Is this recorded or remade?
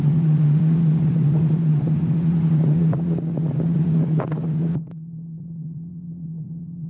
remade